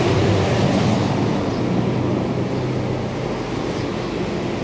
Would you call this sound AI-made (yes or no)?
no